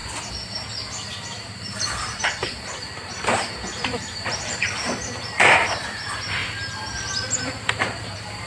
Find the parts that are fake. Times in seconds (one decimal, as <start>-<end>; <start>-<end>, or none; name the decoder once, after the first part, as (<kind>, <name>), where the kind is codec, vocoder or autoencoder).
0.9-6.4 (vocoder, BigVGAN v2); 7.4-8.5